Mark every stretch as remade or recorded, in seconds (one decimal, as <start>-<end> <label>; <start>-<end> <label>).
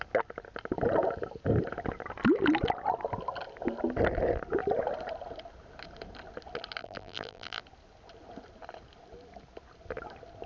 0.0-6.8 recorded; 6.8-7.6 remade; 7.6-10.5 recorded